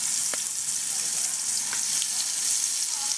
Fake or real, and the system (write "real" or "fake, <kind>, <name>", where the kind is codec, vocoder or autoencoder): real